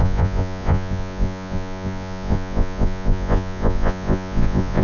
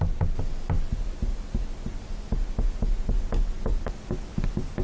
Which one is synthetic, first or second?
first